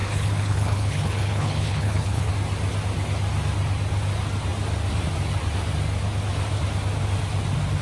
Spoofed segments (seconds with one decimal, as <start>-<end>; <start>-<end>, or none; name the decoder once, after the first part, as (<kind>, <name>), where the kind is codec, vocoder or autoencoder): 0.0-2.3 (codec, HILCodec)

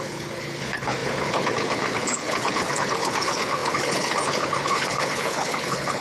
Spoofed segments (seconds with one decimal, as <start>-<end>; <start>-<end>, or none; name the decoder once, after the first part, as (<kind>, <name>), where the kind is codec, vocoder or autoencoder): 0.0-6.0 (codec, HILCodec)

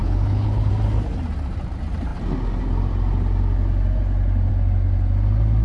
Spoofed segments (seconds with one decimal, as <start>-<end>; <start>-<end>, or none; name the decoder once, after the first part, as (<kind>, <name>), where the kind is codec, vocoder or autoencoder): 0.0-0.7 (codec, HILCodec)

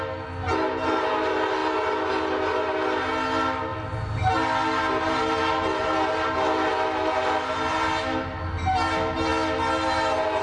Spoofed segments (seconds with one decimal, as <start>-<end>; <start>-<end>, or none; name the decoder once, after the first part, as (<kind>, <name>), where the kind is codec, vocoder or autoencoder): none

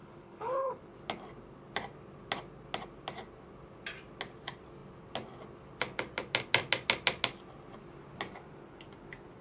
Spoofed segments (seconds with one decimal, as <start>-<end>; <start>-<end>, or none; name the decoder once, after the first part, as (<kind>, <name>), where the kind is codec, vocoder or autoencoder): 0.0-0.8 (codec, HILCodec)

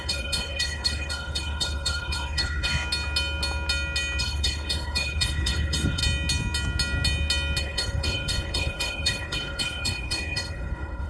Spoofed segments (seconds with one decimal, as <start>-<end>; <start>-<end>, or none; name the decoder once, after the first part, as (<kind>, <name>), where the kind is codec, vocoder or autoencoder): 0.0-2.7 (codec, HILCodec); 4.2-6.0; 7.6-11.1